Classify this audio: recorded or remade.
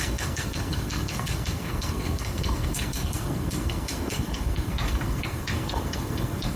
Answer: remade